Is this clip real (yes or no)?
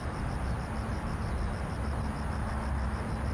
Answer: yes